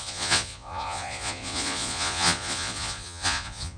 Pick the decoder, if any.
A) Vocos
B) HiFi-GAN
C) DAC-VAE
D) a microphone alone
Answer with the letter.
A